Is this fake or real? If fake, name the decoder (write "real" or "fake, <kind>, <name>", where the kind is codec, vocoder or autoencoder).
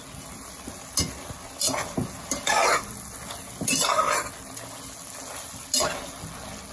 real